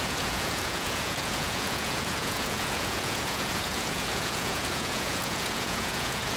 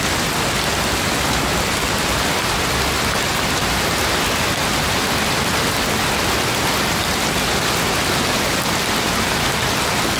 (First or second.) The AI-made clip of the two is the first